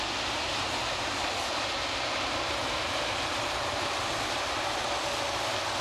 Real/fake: real